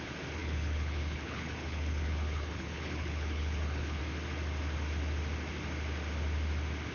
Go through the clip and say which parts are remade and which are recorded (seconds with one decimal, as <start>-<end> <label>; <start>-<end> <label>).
0.0-0.4 recorded; 0.4-4.0 remade; 4.0-6.9 recorded